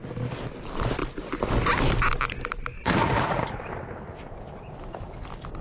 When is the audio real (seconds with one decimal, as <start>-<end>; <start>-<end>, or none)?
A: 0.0-2.8; 3.5-5.6